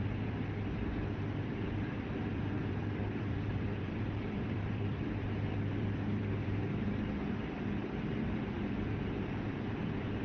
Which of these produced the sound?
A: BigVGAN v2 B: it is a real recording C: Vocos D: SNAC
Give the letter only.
A